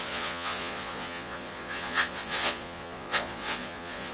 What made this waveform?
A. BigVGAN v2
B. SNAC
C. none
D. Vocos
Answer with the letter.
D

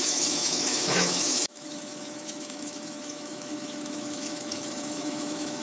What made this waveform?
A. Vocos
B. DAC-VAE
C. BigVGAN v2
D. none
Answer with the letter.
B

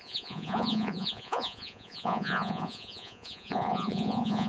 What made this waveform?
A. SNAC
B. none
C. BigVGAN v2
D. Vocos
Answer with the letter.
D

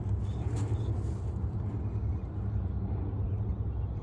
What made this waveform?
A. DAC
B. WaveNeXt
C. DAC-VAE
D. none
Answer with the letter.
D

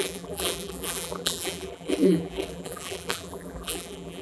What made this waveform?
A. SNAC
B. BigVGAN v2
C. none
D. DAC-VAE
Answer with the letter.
B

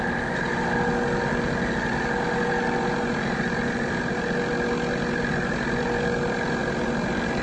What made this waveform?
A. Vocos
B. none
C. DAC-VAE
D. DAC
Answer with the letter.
B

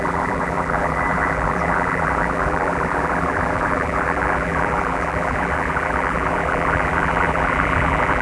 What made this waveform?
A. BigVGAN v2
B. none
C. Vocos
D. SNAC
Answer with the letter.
A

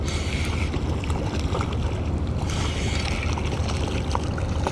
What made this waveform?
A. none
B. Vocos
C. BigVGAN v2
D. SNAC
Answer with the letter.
A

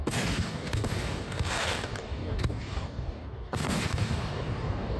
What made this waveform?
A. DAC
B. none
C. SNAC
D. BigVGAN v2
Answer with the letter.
A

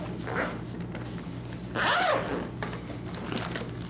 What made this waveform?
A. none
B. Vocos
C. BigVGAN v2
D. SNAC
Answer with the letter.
A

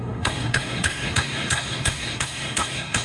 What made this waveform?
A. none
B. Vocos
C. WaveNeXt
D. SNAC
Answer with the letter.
D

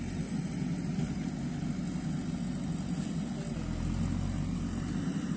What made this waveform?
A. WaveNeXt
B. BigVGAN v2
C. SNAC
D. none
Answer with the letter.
D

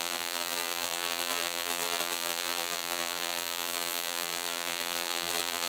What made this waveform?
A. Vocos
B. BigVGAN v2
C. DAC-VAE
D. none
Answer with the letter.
B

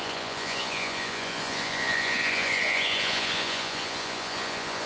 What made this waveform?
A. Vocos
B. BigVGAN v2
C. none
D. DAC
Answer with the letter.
A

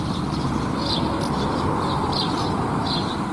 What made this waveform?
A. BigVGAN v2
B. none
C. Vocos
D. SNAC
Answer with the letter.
B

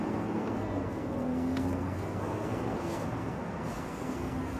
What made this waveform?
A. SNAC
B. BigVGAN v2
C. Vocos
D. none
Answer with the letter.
A